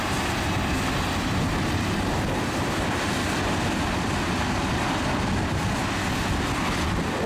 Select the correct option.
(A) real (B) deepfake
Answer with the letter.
A